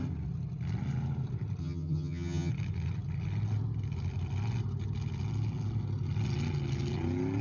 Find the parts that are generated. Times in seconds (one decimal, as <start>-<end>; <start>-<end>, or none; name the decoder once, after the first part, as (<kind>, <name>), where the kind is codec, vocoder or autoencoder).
1.6-2.5 (vocoder, HiFi-GAN)